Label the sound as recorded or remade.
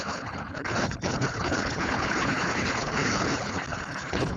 remade